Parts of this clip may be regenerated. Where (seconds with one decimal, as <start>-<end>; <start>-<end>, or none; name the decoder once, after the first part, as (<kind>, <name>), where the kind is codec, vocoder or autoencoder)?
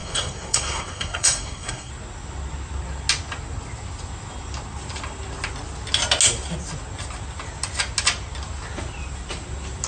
0.0-1.9 (codec, SNAC)